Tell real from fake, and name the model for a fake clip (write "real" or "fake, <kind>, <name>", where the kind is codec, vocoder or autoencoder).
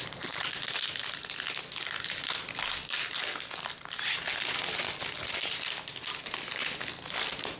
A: real